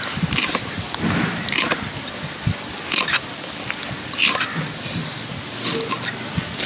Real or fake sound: real